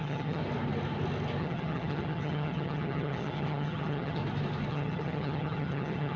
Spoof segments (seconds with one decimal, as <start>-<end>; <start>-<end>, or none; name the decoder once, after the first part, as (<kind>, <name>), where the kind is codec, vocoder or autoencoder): 0.0-0.4 (vocoder, HiFi-GAN); 1.4-4.2; 4.7-6.2